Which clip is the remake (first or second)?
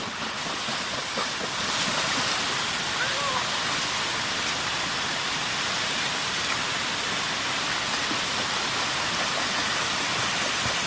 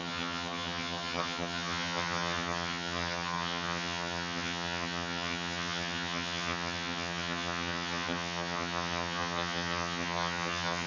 second